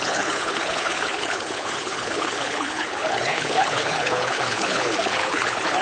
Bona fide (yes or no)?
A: no